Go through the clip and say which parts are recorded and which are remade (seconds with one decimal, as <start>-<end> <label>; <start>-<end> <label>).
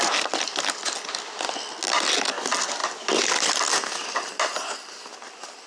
0.0-5.7 recorded